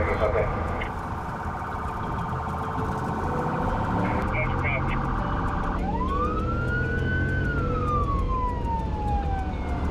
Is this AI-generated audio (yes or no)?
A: no